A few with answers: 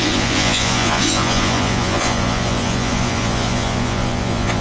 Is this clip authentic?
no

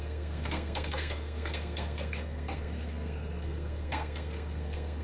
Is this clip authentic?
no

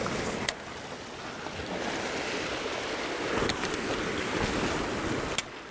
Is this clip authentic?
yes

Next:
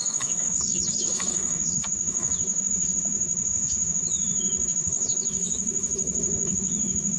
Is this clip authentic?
no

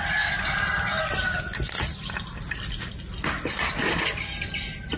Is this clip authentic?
yes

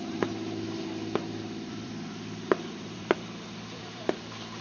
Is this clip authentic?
no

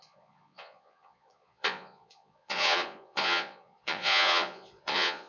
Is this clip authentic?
no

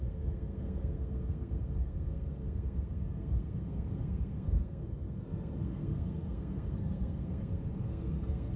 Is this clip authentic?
no